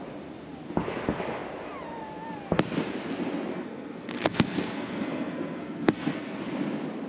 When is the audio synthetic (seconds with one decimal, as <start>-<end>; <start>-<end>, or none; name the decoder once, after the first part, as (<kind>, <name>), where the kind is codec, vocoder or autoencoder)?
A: 3.5-6.4 (codec, SNAC)